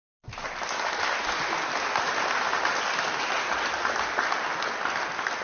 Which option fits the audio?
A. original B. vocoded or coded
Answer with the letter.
A